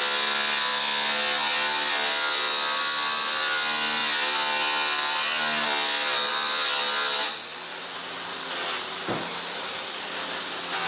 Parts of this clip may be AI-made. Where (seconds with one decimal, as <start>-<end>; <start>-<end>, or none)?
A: none